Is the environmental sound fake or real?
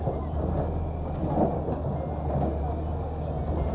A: real